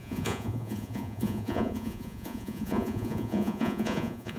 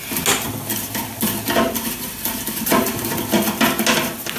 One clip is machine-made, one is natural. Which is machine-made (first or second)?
first